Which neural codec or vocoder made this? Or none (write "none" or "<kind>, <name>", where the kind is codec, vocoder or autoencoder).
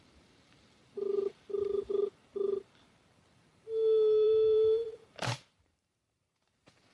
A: vocoder, BigVGAN v2